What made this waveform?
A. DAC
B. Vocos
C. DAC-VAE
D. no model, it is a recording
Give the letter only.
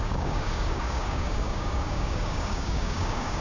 A